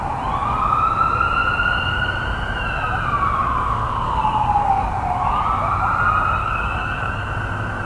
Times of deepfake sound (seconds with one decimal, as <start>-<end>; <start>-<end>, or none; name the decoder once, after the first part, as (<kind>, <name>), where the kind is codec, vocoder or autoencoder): 3.4-4.9 (codec, DAC); 6.4-7.3